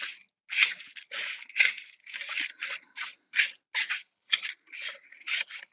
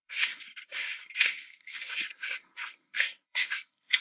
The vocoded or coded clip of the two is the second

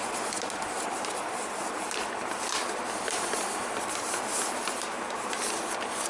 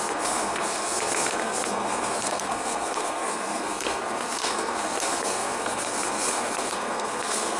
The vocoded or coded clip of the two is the second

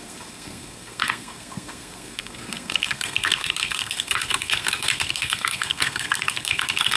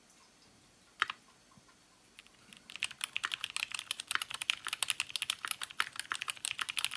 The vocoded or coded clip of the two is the first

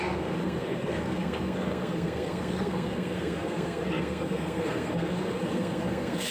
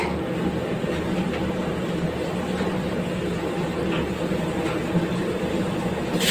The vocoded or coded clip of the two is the first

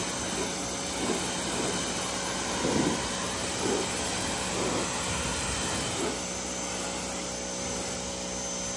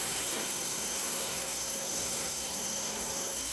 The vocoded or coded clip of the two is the second